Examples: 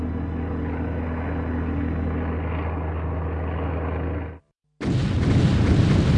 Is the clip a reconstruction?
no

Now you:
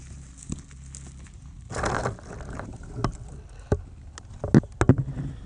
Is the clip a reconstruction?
no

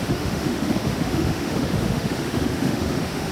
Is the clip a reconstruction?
yes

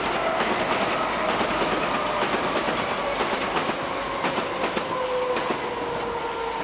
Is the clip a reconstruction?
no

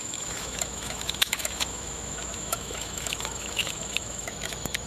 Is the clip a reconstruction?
yes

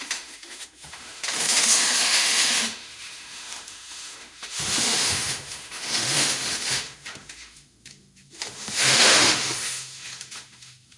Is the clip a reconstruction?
yes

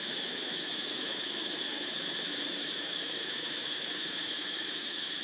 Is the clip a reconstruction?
yes